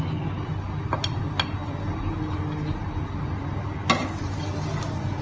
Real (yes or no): yes